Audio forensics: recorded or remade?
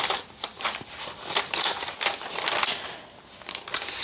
recorded